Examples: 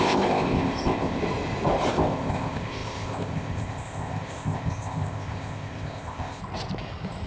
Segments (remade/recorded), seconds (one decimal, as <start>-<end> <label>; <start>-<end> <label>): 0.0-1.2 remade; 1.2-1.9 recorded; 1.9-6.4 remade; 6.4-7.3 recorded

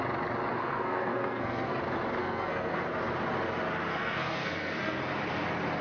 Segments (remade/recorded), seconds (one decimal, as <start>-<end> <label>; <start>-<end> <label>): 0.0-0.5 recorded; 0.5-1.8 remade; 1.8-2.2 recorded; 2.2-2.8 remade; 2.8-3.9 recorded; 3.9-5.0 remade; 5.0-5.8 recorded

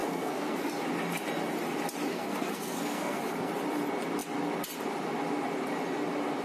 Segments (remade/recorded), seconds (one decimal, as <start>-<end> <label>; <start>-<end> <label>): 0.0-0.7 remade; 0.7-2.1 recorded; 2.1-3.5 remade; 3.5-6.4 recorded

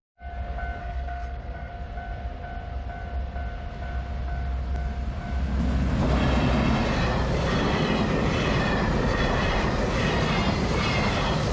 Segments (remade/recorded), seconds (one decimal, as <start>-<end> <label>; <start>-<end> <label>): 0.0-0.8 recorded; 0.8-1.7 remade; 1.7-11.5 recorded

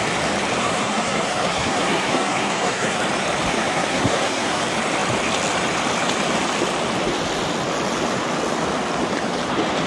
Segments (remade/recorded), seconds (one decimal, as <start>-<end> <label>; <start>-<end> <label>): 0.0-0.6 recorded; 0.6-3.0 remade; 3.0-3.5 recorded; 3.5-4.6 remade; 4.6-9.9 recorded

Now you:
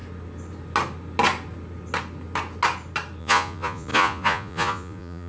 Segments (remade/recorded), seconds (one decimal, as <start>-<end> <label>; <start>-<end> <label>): 0.0-3.2 recorded; 3.2-5.3 remade